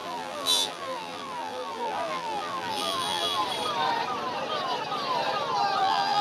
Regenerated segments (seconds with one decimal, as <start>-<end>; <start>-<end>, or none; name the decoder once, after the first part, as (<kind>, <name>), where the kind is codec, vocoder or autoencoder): 0.0-3.4 (vocoder, BigVGAN v2); 5.8-6.2